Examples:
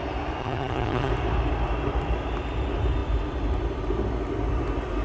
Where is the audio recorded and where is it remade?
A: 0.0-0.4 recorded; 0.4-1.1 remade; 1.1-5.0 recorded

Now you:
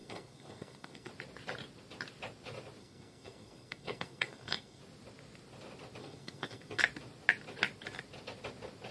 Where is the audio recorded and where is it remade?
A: 0.0-1.1 remade; 1.1-2.8 recorded; 2.8-4.8 remade; 4.8-6.0 recorded; 6.0-6.8 remade; 6.8-8.9 recorded

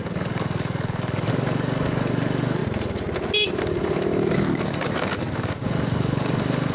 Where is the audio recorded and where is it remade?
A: 0.0-2.6 remade; 2.6-3.5 recorded; 3.5-6.7 remade

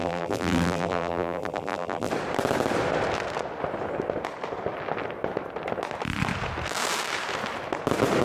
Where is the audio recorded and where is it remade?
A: 0.0-2.1 remade; 2.1-8.2 recorded

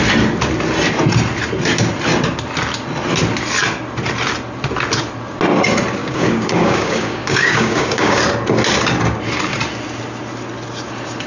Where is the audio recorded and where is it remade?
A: 0.0-6.0 recorded; 6.0-8.2 remade; 8.2-11.3 recorded